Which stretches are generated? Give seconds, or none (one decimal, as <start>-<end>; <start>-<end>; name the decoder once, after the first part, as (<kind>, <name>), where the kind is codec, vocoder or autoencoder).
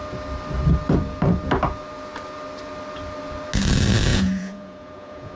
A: 4.1-5.4 (vocoder, Vocos)